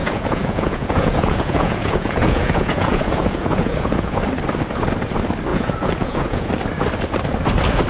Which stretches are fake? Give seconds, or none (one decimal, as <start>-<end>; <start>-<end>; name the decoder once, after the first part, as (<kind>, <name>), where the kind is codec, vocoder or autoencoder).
0.0-4.2 (vocoder, Vocos); 5.5-6.5